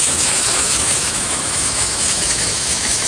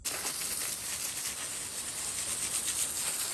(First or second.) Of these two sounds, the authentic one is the second